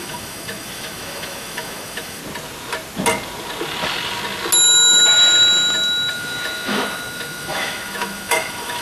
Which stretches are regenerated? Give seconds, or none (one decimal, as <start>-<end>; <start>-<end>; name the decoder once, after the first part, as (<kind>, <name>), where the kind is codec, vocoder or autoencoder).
0.0-2.2 (autoencoder, DAC-VAE); 6.1-8.8